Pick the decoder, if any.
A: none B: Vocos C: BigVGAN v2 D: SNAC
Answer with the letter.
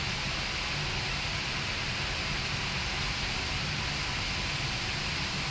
A